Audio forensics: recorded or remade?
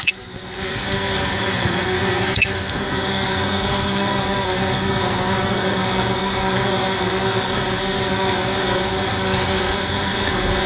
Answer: remade